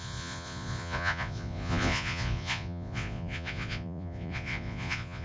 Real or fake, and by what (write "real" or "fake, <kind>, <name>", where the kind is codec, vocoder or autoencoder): fake, vocoder, Vocos